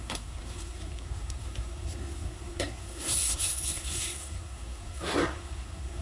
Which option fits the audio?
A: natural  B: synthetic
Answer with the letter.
B